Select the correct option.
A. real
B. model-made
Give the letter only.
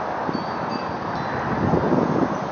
A